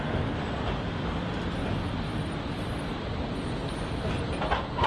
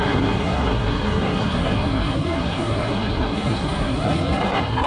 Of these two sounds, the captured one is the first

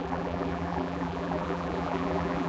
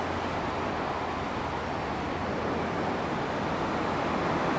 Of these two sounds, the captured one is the second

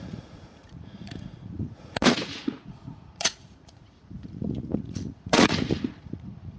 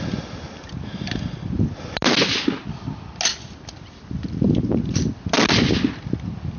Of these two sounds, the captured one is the second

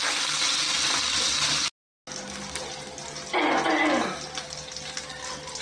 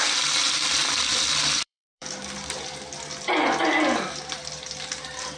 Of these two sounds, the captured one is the first